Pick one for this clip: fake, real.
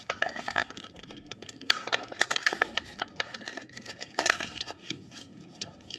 fake